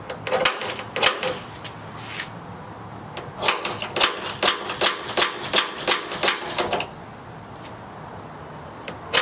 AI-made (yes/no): no